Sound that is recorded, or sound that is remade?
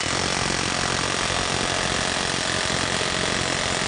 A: recorded